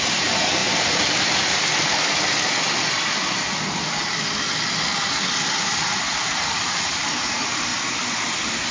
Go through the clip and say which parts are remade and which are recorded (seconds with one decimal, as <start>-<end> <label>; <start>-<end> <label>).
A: 0.0-0.6 remade; 0.6-5.8 recorded; 5.8-7.7 remade; 7.7-8.7 recorded